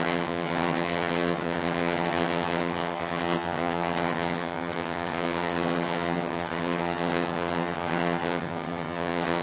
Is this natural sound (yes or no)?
no